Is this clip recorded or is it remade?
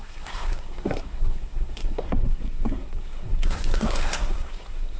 remade